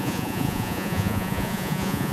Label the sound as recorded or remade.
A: remade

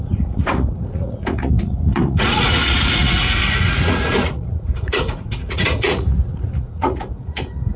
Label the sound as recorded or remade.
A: remade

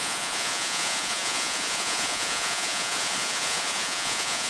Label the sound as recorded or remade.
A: remade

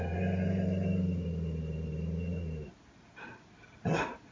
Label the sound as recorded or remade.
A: recorded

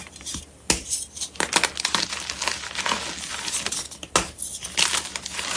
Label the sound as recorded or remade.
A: recorded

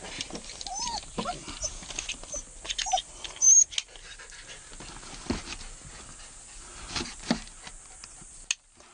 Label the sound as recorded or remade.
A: recorded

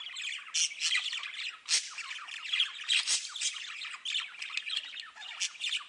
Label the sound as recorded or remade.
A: recorded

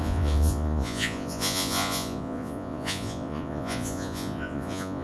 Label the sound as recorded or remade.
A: remade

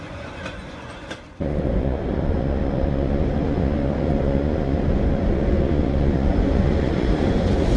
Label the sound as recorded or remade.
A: remade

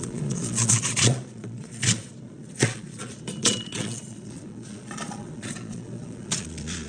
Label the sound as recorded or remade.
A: remade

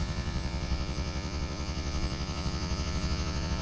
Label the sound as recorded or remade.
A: remade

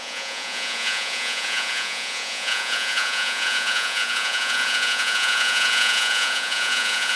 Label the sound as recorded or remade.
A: remade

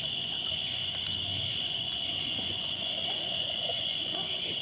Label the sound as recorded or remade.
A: remade